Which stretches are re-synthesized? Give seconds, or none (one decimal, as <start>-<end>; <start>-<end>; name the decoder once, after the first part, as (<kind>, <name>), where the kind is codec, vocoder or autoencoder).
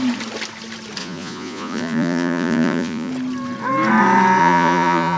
1.0-3.1 (vocoder, Vocos); 4.4-5.2